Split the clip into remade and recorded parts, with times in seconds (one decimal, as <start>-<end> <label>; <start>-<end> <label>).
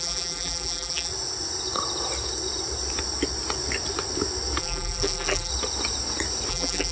0.0-1.1 remade; 1.1-4.6 recorded; 4.6-5.5 remade; 5.5-6.5 recorded; 6.5-6.9 remade